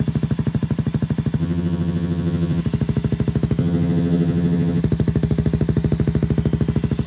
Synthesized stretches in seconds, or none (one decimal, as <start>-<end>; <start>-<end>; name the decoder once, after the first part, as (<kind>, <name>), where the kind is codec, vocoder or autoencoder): 1.4-2.6 (vocoder, HiFi-GAN); 3.6-4.8